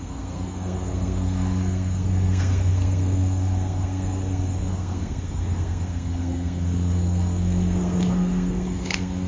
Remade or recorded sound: remade